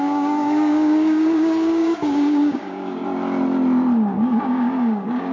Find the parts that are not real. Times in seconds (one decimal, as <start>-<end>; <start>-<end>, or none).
0.0-3.0; 4.4-5.3